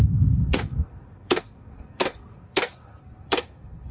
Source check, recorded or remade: remade